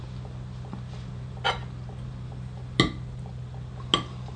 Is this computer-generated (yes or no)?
no